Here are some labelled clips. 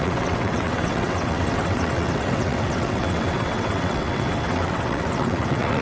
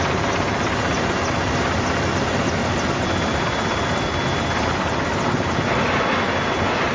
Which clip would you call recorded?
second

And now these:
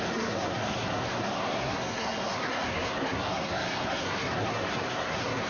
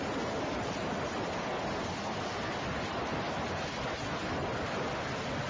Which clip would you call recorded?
second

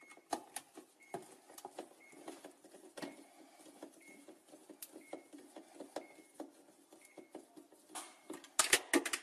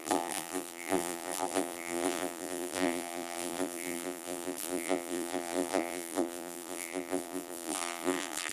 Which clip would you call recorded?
first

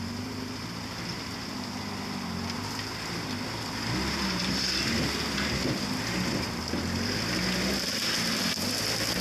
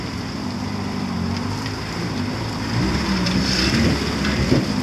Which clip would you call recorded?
first